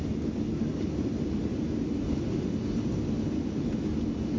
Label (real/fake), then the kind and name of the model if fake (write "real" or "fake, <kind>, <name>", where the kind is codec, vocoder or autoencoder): real